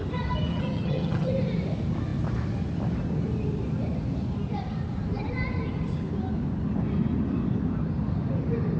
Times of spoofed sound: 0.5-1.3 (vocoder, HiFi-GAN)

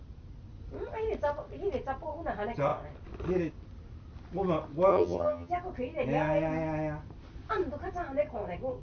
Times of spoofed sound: 4.9-5.5 (vocoder, HiFi-GAN)